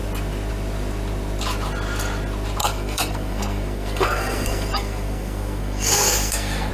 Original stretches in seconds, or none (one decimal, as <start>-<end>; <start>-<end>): 0.0-2.6